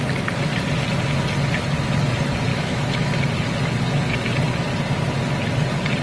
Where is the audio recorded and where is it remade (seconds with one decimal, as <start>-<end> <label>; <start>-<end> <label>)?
0.0-2.5 recorded; 2.5-3.2 remade; 3.2-6.0 recorded